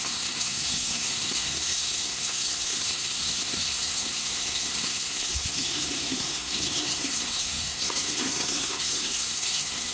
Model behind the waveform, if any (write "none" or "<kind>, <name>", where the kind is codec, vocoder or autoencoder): codec, SNAC